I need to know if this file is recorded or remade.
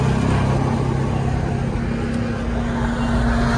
recorded